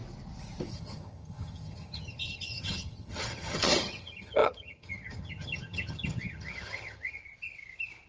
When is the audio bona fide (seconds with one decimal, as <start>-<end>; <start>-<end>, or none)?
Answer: 0.0-0.7; 7.2-8.1